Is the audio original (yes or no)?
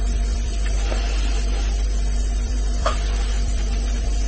no